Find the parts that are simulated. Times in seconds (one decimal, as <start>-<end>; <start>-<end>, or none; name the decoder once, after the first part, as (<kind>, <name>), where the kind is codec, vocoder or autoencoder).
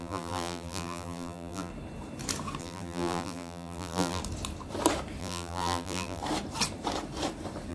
0.0-1.7 (vocoder, BigVGAN v2); 2.6-4.2; 5.2-6.2